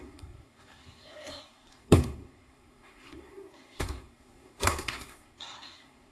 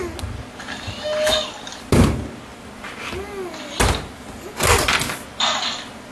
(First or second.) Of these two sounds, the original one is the second